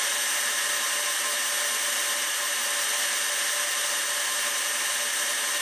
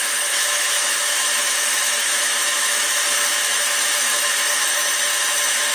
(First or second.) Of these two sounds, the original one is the first